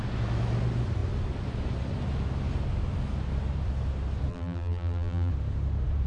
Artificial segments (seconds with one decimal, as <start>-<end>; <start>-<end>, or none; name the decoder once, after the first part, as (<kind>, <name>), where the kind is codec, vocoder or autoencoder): 4.3-5.3 (vocoder, BigVGAN v2)

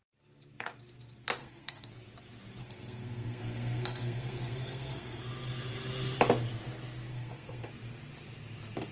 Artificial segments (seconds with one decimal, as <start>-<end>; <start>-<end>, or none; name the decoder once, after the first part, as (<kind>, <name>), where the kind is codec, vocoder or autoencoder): 1.4-1.9 (codec, SNAC); 2.6-5.2; 7.1-7.7

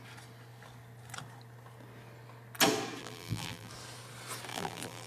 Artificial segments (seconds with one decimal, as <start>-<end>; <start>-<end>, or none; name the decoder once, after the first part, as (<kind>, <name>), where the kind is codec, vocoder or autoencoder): 3.0-3.7 (vocoder, BigVGAN v2); 4.5-5.1

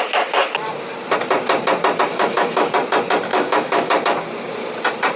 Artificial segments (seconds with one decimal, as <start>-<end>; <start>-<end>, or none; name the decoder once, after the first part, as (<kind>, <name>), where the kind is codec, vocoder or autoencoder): 2.1-2.7 (autoencoder, DAC-VAE); 3.3-3.9

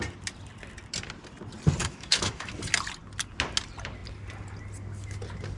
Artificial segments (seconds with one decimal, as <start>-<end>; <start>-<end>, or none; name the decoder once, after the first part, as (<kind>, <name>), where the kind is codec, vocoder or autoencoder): 1.8-2.5 (autoencoder, DAC-VAE)

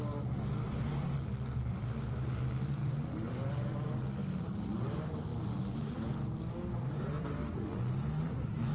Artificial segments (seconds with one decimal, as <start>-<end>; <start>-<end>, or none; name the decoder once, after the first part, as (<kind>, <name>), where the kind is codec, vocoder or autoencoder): none

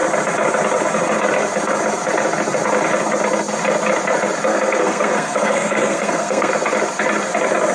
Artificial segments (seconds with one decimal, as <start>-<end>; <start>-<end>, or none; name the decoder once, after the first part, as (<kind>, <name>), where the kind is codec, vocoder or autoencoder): 4.5-6.5 (codec, SNAC)

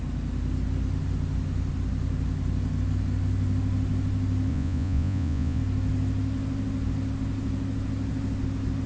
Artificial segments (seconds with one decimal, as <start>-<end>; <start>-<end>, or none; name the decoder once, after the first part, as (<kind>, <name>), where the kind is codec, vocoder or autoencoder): 4.5-5.6 (vocoder, Vocos)